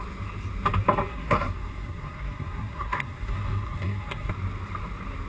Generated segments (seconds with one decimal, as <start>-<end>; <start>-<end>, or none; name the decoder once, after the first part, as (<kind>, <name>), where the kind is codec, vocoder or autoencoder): 1.1-4.3 (codec, SNAC)